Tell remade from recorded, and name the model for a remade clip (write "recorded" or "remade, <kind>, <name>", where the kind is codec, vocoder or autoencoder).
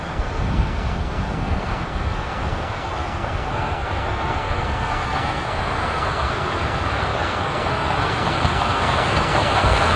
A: remade, codec, SNAC